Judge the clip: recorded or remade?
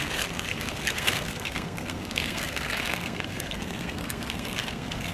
remade